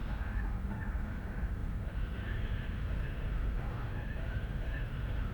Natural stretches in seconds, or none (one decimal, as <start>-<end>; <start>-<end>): none